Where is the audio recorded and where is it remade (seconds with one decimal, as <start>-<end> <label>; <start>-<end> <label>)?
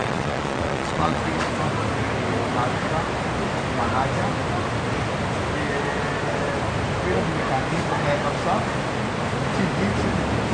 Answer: 0.0-1.2 remade; 1.2-10.5 recorded